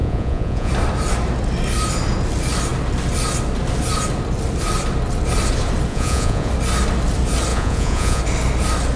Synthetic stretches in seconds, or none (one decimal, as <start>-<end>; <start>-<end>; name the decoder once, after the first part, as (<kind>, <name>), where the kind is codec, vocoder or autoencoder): 0.0-0.7 (vocoder, Vocos); 5.9-6.5; 7.5-8.2